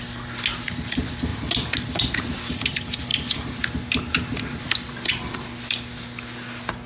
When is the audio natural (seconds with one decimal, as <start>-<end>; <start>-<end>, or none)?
0.0-6.9

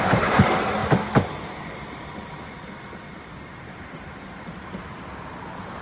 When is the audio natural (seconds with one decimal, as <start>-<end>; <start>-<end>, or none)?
0.8-3.6

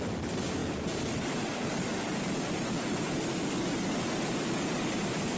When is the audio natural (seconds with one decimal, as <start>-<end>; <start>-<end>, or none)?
0.0-5.4

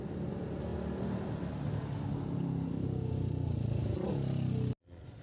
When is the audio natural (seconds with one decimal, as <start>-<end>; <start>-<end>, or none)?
0.0-5.2

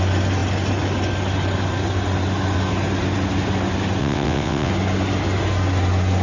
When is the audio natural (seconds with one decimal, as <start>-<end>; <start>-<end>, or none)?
0.0-4.0; 4.7-6.2